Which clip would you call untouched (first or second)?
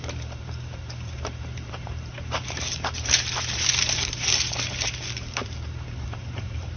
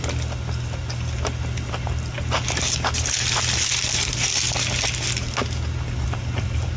second